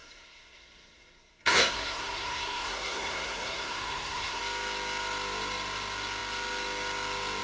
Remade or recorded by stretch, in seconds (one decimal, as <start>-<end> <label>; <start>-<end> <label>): 0.0-4.4 remade; 4.4-7.4 recorded